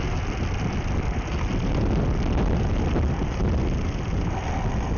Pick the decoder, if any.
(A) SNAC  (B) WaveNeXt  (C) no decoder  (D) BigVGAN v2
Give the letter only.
C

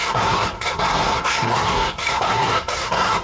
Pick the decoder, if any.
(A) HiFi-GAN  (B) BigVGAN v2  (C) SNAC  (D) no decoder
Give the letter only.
C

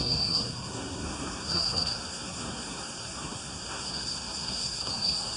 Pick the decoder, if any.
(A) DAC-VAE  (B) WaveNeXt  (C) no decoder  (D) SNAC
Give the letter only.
D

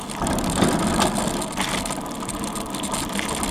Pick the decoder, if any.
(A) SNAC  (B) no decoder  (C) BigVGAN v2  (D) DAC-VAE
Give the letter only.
B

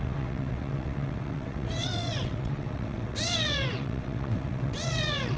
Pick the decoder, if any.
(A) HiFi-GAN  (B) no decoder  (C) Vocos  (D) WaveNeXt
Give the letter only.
D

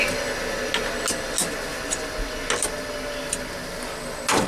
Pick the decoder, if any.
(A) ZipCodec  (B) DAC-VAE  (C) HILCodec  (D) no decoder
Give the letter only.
D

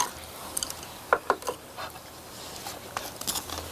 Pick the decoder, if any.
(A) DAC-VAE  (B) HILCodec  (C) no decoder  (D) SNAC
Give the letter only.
C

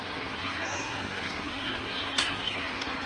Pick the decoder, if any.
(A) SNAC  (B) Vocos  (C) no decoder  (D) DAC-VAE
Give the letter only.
A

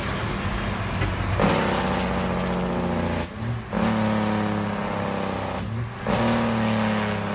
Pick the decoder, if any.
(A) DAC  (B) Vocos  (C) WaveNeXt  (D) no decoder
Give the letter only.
D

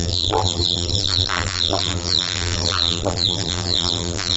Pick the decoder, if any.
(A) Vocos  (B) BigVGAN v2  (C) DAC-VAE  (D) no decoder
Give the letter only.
B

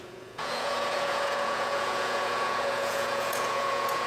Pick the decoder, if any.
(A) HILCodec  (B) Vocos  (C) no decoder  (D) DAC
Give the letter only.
B